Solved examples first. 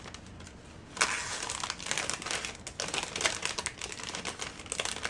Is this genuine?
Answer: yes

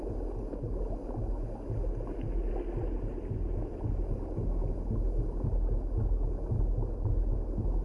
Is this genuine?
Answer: yes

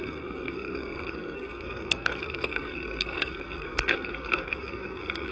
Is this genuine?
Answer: no